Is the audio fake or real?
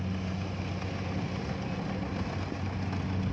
real